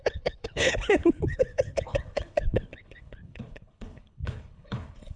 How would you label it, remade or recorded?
remade